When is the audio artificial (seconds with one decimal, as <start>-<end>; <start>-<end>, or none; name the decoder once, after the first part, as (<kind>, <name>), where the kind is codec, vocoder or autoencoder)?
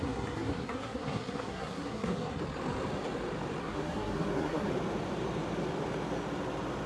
0.0-2.4 (codec, SNAC); 3.6-4.7